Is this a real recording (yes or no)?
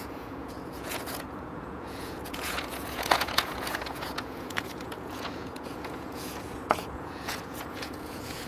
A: no